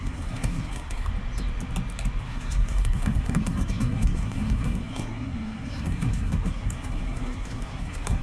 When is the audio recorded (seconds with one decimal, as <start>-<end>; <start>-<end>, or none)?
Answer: 1.1-2.2

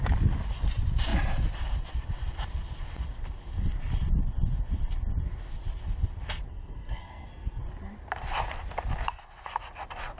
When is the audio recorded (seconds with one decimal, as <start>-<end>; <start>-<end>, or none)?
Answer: 0.0-6.5; 7.6-10.2